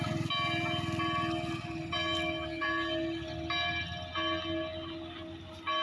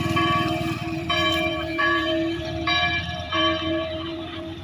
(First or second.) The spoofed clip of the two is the second